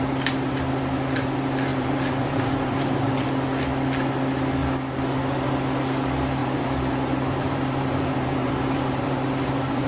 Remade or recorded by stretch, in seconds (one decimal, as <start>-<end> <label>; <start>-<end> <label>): 0.0-1.7 recorded; 1.7-3.3 remade; 3.3-6.4 recorded; 6.4-9.9 remade